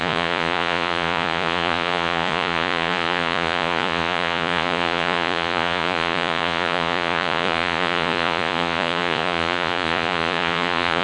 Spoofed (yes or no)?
yes